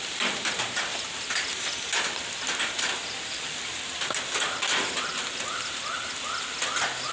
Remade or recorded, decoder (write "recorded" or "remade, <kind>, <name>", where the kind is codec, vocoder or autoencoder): recorded